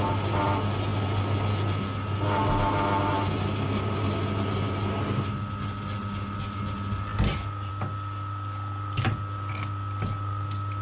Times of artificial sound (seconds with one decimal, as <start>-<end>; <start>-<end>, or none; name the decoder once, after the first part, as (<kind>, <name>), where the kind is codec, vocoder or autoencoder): none

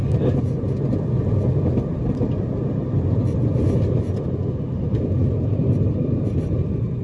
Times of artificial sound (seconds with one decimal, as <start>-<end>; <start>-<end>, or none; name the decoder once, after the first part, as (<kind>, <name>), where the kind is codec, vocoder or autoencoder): none

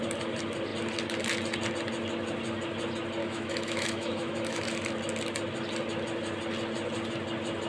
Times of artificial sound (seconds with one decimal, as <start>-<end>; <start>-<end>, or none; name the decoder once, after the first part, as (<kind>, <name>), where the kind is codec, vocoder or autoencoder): 3.2-4.6 (autoencoder, DAC-VAE)

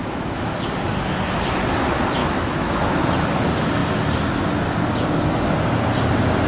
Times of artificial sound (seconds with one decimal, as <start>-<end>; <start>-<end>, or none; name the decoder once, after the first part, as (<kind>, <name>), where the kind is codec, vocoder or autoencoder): 0.0-0.5 (autoencoder, DAC-VAE); 2.2-3.0

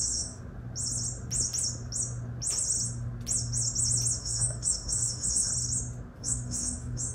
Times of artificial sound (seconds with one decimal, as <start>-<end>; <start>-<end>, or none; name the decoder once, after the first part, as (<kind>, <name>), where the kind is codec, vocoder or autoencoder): 0.0-0.4 (autoencoder, DAC-VAE); 4.2-5.5; 6.2-7.1

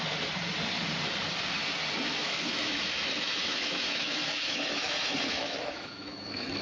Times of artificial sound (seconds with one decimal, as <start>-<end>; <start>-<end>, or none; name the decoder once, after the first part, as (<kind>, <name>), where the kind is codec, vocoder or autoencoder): 2.2-6.6 (autoencoder, DAC-VAE)

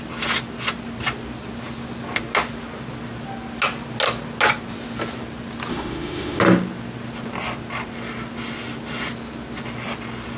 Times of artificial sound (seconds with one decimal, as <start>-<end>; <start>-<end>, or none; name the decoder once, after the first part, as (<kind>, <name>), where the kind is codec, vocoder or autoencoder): 5.7-6.4 (autoencoder, DAC-VAE)

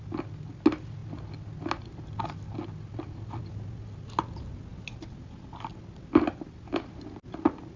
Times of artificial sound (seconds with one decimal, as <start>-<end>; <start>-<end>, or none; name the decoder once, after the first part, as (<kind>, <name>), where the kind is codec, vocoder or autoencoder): none